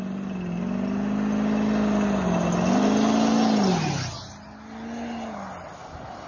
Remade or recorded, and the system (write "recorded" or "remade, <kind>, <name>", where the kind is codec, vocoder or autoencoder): recorded